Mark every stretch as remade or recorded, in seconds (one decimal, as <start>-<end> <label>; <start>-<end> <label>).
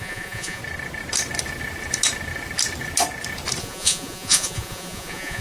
0.0-0.6 remade; 0.6-3.6 recorded; 3.6-5.4 remade